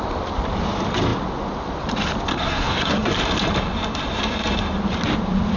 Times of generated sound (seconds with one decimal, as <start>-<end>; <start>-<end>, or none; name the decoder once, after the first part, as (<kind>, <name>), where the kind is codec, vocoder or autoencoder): 2.3-3.1 (codec, SNAC)